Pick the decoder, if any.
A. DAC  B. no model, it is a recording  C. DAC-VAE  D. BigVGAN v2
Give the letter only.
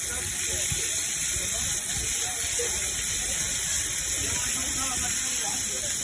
B